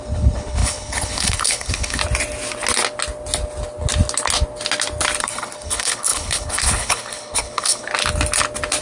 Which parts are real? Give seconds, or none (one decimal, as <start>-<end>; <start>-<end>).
2.0-5.2; 7.9-8.8